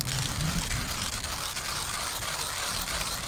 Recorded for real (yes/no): yes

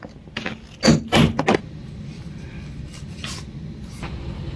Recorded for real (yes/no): yes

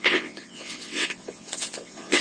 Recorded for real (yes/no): no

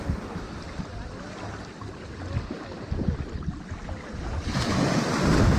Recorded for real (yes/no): yes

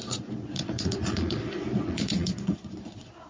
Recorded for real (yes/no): no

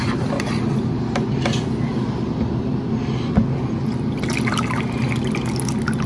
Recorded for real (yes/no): yes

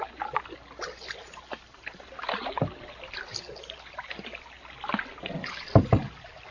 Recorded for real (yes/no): yes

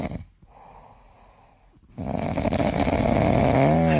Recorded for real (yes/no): yes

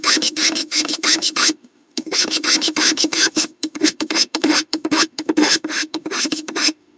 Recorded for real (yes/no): no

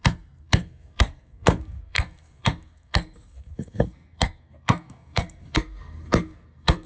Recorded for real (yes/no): no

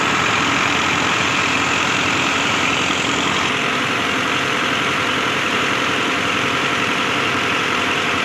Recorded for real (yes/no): no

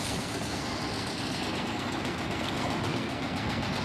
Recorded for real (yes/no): no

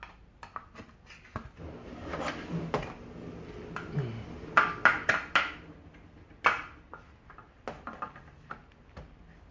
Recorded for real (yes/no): yes